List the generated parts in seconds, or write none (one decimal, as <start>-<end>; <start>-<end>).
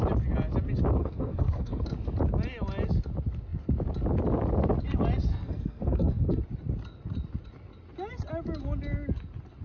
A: 1.0-1.8; 5.3-6.4